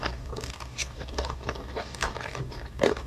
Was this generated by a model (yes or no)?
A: yes